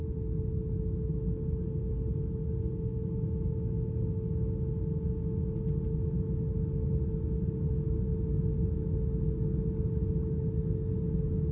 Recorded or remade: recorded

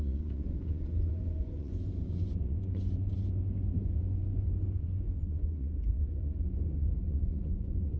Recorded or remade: remade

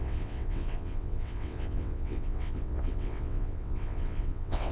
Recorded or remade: remade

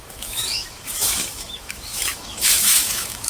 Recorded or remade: remade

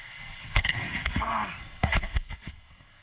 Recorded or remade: remade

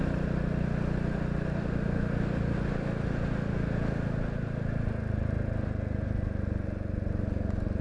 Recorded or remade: recorded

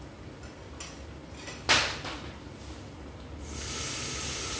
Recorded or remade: recorded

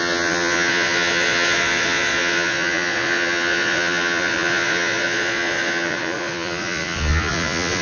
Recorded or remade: remade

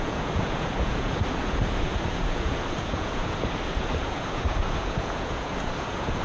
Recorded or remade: remade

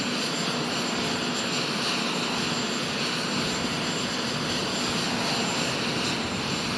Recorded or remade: recorded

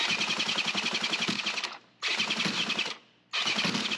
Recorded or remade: recorded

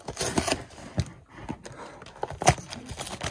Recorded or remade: recorded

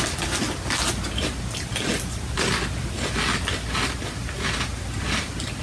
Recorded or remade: recorded